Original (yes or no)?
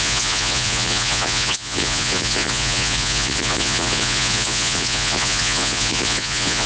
no